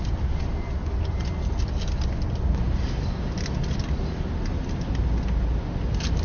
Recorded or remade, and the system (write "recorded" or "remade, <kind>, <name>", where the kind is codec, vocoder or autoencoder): recorded